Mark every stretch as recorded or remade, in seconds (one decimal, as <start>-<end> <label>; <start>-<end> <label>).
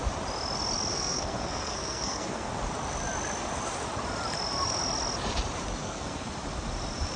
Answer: 0.0-0.9 recorded; 0.9-2.5 remade; 2.5-5.8 recorded; 5.8-6.3 remade; 6.3-7.2 recorded